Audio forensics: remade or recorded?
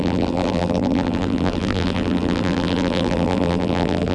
remade